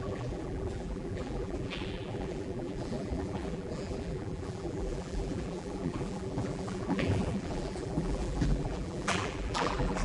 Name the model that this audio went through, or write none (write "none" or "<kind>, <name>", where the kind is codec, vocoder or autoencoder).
vocoder, BigVGAN v2